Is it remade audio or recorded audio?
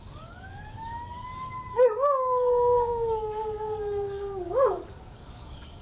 remade